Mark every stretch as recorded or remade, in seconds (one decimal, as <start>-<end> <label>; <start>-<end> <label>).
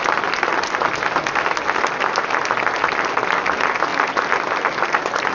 0.0-5.3 recorded